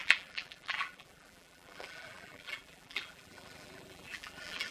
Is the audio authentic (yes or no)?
no